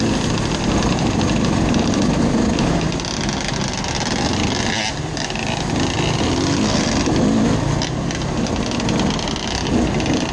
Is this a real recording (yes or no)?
yes